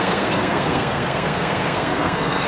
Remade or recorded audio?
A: remade